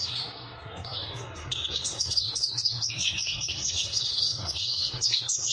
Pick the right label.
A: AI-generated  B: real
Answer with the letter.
A